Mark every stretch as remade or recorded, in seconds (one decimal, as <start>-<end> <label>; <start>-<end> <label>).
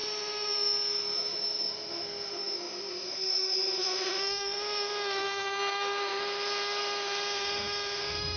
0.0-8.4 remade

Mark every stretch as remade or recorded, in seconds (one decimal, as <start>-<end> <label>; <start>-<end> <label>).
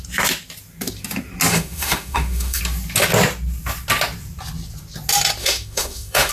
0.0-1.5 recorded; 1.5-2.6 remade; 2.6-5.4 recorded; 5.4-6.3 remade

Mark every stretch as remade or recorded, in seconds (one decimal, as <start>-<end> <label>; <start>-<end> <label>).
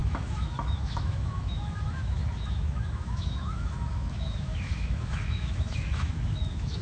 0.0-6.8 remade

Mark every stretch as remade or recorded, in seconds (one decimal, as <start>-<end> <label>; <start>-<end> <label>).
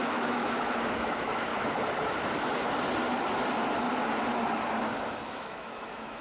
0.0-1.5 remade; 1.5-5.2 recorded; 5.2-6.2 remade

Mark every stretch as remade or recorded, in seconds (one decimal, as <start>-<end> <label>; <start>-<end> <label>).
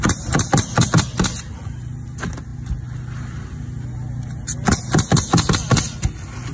0.0-6.5 recorded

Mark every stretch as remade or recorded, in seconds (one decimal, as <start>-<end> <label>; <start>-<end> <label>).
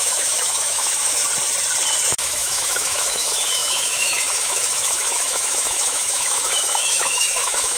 0.0-1.2 remade; 1.2-2.1 recorded; 2.1-7.8 remade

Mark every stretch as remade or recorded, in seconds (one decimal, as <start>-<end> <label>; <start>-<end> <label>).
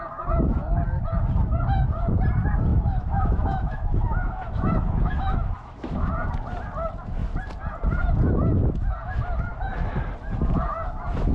0.0-2.7 recorded; 2.7-6.1 remade; 6.1-11.3 recorded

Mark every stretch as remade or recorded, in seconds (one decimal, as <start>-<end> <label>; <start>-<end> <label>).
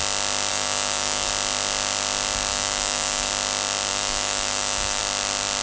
0.0-0.5 recorded; 0.5-1.3 remade; 1.3-2.5 recorded; 2.5-3.3 remade; 3.3-3.9 recorded; 3.9-5.0 remade; 5.0-5.6 recorded